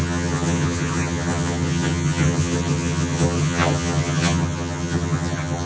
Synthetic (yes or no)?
yes